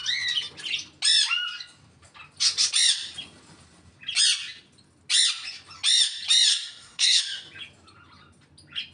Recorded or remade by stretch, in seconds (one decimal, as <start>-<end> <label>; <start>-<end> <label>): 0.0-6.5 recorded; 6.5-7.2 remade; 7.2-8.9 recorded